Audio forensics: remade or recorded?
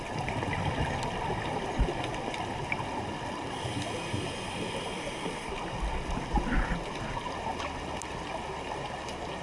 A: recorded